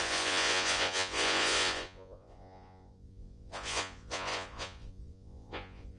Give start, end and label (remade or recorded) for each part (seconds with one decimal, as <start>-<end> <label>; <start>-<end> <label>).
0.0-6.0 remade